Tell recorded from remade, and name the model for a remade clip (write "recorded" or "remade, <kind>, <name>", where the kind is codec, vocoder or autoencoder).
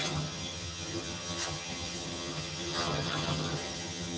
remade, vocoder, HiFi-GAN